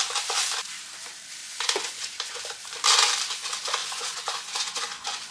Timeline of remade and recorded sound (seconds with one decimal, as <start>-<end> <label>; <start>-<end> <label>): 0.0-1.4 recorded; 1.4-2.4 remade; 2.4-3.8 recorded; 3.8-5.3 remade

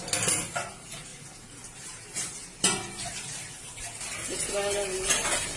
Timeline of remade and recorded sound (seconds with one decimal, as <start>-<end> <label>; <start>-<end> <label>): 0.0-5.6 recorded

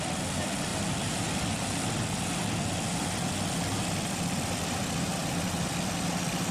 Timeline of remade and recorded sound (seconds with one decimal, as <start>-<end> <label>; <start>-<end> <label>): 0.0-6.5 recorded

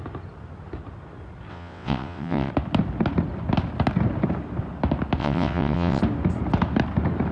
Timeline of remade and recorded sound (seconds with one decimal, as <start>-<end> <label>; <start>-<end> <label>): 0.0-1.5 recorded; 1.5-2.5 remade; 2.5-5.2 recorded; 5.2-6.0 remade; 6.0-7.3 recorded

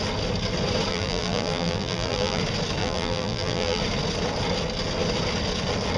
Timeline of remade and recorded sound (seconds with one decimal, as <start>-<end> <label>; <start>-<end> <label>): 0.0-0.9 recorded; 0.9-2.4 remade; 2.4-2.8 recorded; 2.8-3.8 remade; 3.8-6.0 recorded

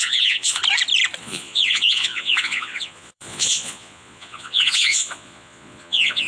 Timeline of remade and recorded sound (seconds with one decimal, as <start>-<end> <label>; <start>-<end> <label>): 0.0-0.6 remade; 0.6-1.2 recorded; 1.2-6.3 remade

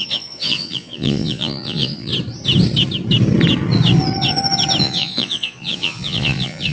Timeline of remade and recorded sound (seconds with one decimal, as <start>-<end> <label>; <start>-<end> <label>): 0.0-2.1 remade; 2.1-4.8 recorded; 4.8-6.7 remade

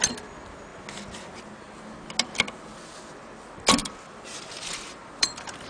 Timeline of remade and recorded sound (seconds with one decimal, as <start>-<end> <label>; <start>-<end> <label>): 0.0-3.8 recorded; 3.8-5.7 remade